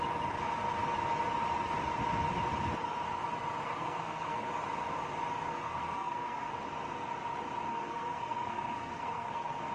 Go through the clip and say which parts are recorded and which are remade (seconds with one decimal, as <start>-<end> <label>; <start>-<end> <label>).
0.0-3.6 recorded; 3.6-4.5 remade; 4.5-5.5 recorded; 5.5-6.5 remade; 6.5-7.7 recorded; 7.7-9.7 remade